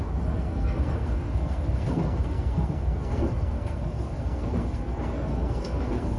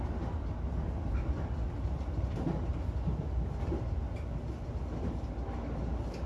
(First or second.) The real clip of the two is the second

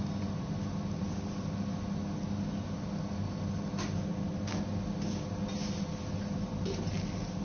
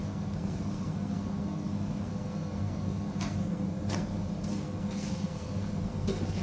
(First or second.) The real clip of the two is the first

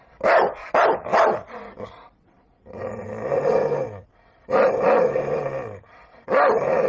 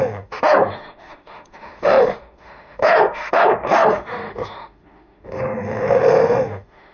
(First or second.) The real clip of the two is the first